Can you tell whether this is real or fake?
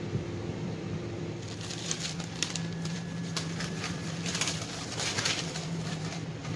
fake